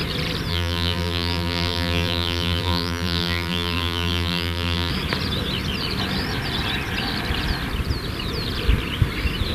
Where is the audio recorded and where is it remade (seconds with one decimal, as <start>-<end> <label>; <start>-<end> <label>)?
0.0-0.5 recorded; 0.5-4.9 remade; 4.9-9.5 recorded